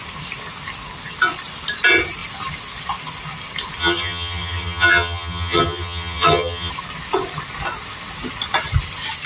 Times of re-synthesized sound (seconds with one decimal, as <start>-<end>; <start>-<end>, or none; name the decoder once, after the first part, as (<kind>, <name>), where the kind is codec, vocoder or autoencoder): 3.8-6.7 (vocoder, HiFi-GAN)